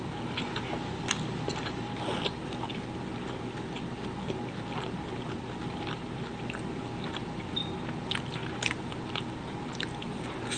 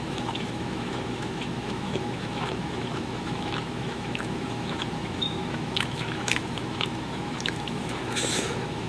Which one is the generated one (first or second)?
second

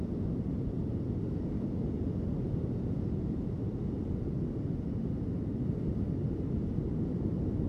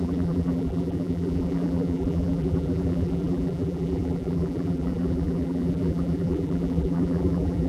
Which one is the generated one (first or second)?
second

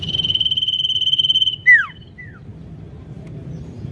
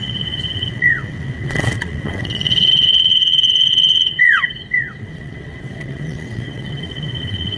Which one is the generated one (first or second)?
second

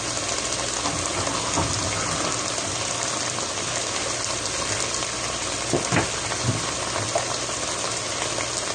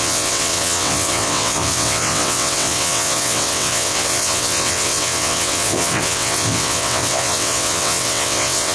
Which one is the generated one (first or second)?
second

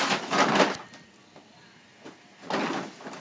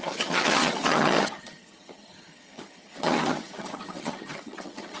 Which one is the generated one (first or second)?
second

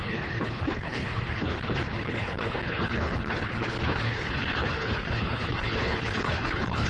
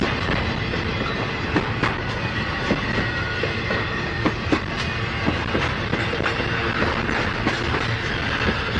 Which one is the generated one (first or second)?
first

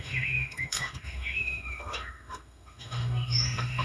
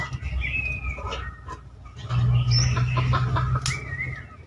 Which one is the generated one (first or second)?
first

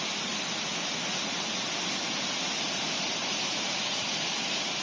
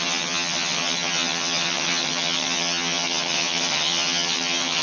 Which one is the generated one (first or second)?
second